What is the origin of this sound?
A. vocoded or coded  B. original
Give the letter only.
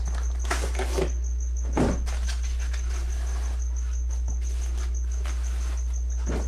B